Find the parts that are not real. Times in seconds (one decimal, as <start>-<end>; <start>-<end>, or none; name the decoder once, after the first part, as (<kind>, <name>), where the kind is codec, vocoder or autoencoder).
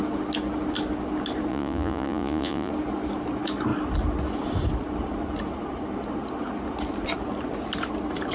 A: 1.5-2.7 (vocoder, Vocos)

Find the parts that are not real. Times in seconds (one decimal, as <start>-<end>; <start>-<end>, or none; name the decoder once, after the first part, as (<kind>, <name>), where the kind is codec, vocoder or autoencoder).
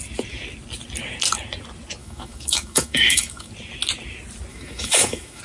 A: 2.0-3.5 (autoencoder, DAC-VAE); 4.5-5.4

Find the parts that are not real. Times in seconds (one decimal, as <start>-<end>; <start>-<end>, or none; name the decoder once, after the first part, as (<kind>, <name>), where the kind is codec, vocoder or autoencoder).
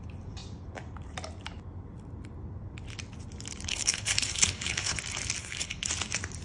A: 3.7-5.0 (codec, HILCodec); 5.4-5.9